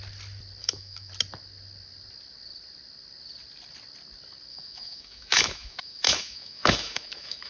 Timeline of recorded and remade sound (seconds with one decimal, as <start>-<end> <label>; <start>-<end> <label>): 0.0-0.6 recorded; 0.6-1.1 remade; 1.1-4.5 recorded; 4.5-7.5 remade